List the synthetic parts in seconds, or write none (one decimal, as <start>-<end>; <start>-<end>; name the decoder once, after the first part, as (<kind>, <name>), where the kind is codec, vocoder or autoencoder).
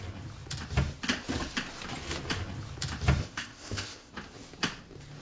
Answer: 3.2-4.1 (codec, ZipCodec)